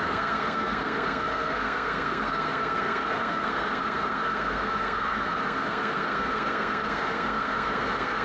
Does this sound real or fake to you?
fake